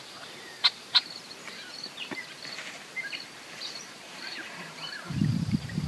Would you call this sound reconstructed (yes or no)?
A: yes